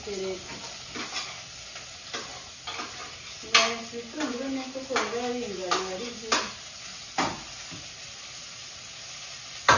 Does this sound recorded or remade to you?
recorded